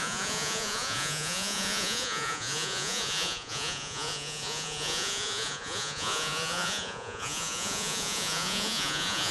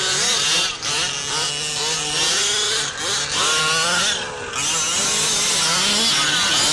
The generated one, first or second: first